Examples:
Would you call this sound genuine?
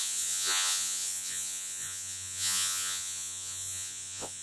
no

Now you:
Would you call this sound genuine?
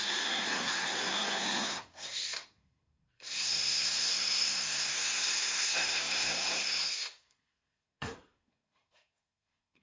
no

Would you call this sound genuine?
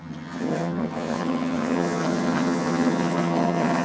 no